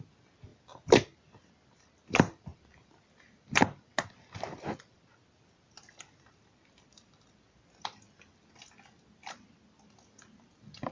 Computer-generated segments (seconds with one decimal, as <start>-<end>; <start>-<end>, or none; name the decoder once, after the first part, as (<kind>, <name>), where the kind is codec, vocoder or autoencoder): none